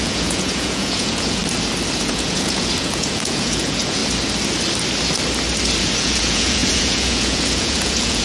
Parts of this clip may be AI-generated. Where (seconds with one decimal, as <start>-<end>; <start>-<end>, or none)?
0.0-1.4; 2.0-4.0; 5.8-8.2